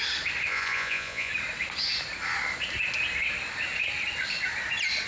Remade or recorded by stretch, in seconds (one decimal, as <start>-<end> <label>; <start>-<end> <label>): 0.0-0.5 recorded; 0.5-1.3 remade; 1.3-5.1 recorded